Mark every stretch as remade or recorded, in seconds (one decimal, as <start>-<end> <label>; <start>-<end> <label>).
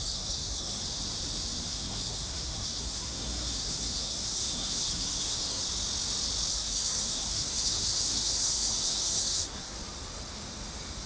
0.0-0.8 remade; 0.8-1.7 recorded; 1.7-5.6 remade; 5.6-6.5 recorded; 6.5-9.8 remade; 9.8-11.1 recorded